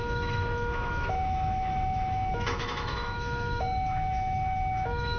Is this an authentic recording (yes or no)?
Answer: no